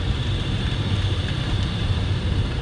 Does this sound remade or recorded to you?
remade